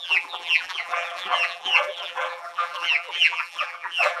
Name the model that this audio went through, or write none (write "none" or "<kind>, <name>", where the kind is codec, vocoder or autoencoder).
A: vocoder, BigVGAN v2